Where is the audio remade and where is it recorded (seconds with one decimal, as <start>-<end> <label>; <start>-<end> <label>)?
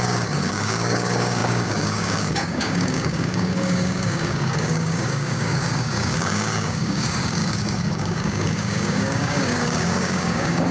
0.0-10.7 remade